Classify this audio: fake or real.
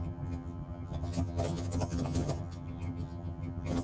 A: fake